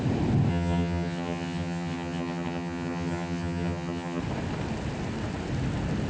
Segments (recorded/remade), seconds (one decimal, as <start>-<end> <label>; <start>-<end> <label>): 0.0-0.5 recorded; 0.5-4.2 remade; 4.2-6.1 recorded

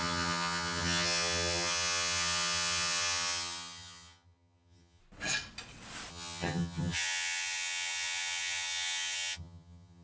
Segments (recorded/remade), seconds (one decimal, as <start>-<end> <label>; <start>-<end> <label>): 0.0-5.0 remade; 5.0-6.1 recorded; 6.1-10.0 remade